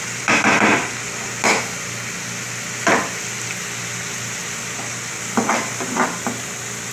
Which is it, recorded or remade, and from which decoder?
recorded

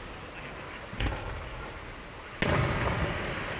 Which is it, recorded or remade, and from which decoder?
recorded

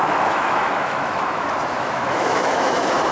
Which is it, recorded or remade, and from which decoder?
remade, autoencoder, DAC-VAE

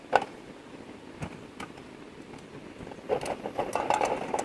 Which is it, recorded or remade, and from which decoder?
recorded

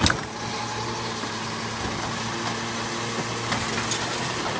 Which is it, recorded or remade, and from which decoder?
recorded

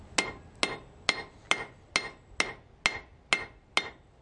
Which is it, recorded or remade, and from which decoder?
recorded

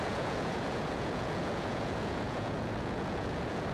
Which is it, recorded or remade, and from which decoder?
remade, vocoder, Vocos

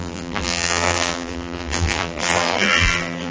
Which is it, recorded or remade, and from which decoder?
remade, vocoder, BigVGAN v2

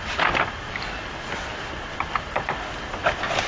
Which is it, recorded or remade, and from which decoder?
recorded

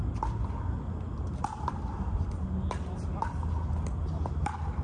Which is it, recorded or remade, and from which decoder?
recorded